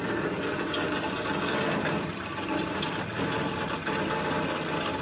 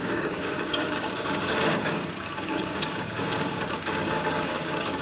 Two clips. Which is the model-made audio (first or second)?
second